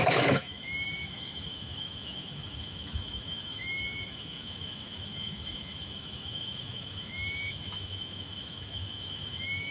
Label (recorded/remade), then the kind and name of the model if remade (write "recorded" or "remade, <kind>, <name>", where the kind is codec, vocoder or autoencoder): remade, autoencoder, DAC-VAE